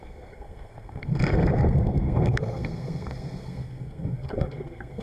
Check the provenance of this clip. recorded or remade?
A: remade